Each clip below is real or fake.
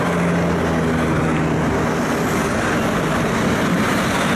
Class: real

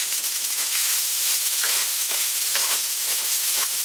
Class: fake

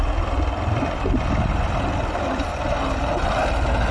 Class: real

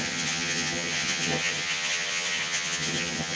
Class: fake